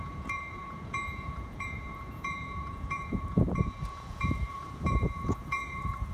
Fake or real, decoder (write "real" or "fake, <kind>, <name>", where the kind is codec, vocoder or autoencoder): fake, vocoder, Vocos